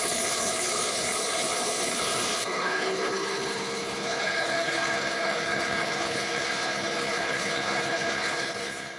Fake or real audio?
fake